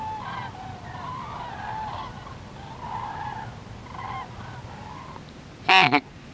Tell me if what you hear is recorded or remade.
recorded